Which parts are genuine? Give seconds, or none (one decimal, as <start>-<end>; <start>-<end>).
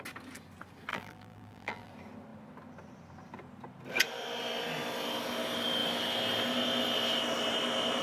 0.0-0.9; 1.9-8.0